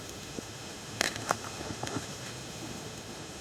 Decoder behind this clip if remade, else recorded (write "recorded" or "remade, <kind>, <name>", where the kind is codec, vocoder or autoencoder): remade, autoencoder, DAC-VAE